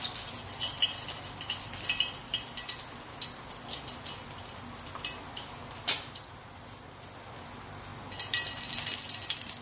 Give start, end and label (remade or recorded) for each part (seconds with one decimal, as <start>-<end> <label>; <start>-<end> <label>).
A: 0.0-9.6 recorded